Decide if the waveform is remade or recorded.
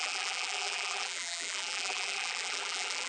remade